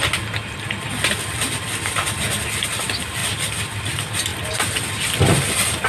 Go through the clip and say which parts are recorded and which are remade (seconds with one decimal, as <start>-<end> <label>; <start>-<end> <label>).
0.0-5.9 recorded